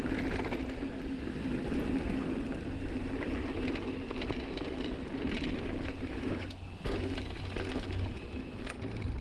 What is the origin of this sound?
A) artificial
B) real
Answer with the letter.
B